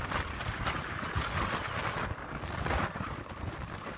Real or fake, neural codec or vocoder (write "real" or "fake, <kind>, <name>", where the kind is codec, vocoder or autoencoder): real